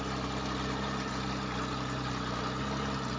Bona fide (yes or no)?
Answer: yes